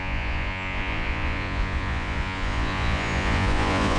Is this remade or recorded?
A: remade